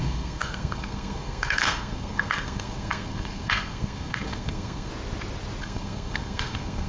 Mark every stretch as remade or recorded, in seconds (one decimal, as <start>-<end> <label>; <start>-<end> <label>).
0.0-4.9 remade; 4.9-5.6 recorded; 5.6-6.9 remade